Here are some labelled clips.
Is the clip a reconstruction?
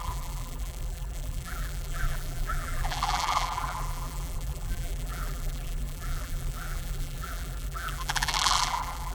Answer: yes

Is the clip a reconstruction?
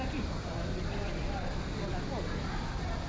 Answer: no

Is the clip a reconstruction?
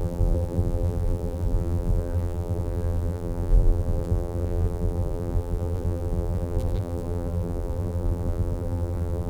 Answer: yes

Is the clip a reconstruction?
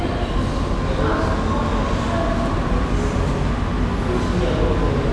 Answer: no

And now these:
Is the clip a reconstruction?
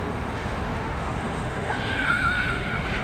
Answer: yes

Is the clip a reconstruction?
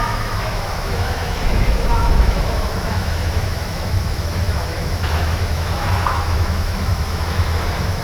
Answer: yes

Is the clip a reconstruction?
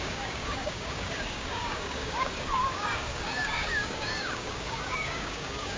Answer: yes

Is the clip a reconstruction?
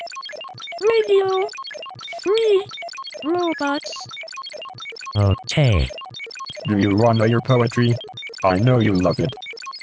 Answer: no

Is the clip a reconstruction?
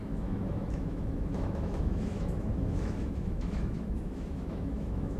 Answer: yes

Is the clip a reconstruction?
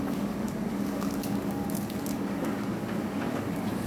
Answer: yes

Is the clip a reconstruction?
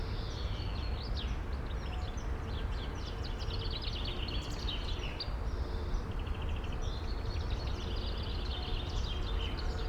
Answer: no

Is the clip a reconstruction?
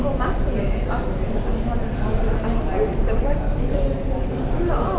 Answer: no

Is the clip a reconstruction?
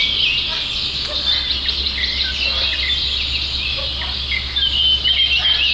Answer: no